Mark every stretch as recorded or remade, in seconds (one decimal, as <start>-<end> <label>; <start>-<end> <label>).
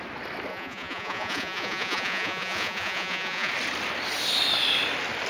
0.0-0.5 recorded; 0.5-3.5 remade; 3.5-5.3 recorded